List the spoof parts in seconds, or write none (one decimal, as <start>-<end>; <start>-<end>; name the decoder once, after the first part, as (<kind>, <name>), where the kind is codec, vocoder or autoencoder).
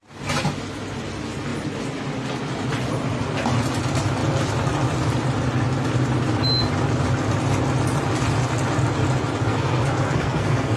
9.5-10.8 (codec, SNAC)